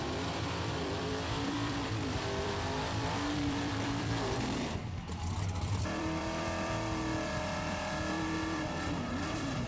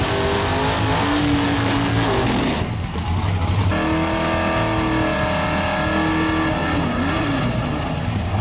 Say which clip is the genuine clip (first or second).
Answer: second